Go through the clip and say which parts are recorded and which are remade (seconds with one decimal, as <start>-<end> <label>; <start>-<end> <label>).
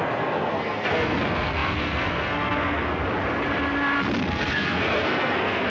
0.0-3.0 remade; 3.0-4.3 recorded; 4.3-5.7 remade